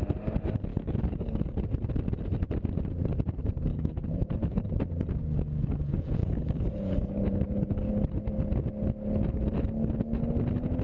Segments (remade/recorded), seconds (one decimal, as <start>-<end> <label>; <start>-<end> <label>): 0.0-0.7 recorded; 0.7-1.6 remade; 1.6-3.7 recorded; 3.7-4.8 remade; 4.8-6.2 recorded; 6.2-7.9 remade; 7.9-10.8 recorded

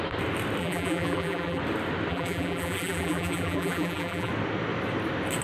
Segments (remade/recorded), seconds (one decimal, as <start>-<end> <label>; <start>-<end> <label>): 0.0-0.6 recorded; 0.6-1.6 remade; 1.6-2.1 recorded; 2.1-4.3 remade; 4.3-5.4 recorded

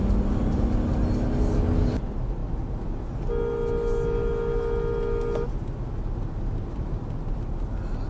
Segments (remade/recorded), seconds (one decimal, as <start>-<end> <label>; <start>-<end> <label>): 0.0-8.1 recorded

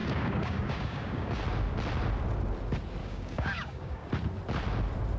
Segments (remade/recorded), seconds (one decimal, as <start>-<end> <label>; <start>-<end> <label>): 0.0-1.4 remade; 1.4-3.0 recorded; 3.0-4.1 remade; 4.1-5.2 recorded

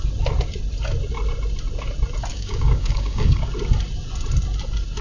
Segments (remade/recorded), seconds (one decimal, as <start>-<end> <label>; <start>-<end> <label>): 0.0-2.3 recorded; 2.3-3.5 remade; 3.5-5.0 recorded